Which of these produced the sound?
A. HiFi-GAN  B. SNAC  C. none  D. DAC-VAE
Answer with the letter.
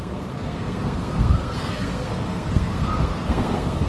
B